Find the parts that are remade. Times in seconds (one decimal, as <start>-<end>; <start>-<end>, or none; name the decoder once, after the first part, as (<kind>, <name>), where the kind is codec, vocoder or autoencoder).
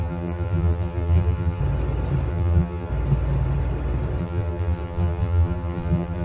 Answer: 0.0-1.6 (vocoder, BigVGAN v2); 2.3-2.9; 4.2-6.2